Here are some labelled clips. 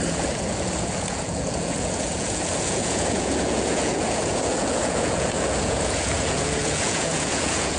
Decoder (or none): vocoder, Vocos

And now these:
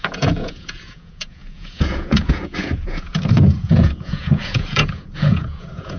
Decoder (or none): vocoder, Vocos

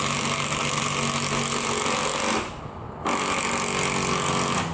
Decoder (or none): none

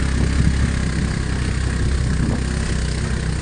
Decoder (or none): none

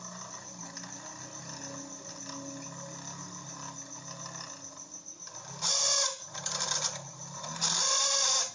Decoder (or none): none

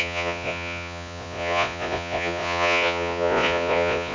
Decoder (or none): vocoder, Vocos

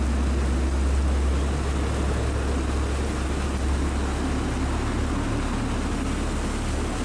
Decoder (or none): none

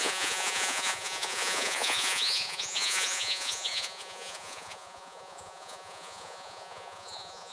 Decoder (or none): vocoder, Vocos